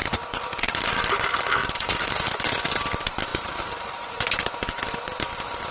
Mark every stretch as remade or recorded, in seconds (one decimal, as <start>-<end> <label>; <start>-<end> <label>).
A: 0.0-0.7 remade; 0.7-1.6 recorded; 1.6-2.5 remade; 2.5-3.3 recorded; 3.3-4.1 remade; 4.1-5.7 recorded